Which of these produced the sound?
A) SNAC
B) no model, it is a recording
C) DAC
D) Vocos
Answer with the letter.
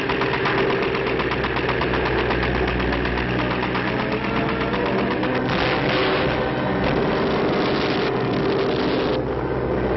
B